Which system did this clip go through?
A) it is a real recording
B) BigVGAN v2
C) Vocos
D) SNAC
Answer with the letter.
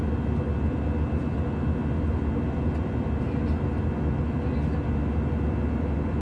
A